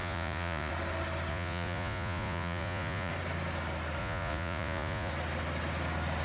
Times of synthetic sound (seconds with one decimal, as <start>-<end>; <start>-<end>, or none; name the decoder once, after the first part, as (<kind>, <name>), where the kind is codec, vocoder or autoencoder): 0.0-0.7 (vocoder, Vocos); 1.3-3.1; 4.0-5.1